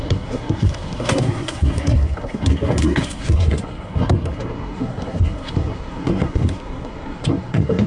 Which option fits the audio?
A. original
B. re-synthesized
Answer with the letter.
B